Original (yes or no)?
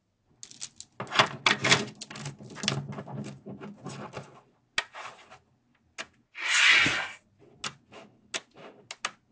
yes